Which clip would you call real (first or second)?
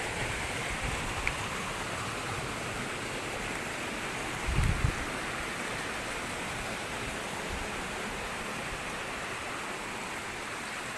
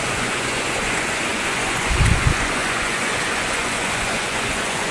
first